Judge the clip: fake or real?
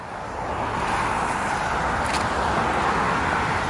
real